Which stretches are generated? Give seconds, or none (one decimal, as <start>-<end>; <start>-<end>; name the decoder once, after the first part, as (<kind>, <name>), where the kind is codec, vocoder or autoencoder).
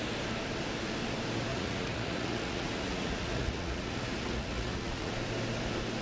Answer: 1.5-5.1 (vocoder, Vocos)